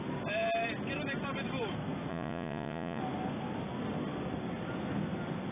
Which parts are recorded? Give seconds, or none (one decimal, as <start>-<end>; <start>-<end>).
0.0-2.1; 3.0-5.5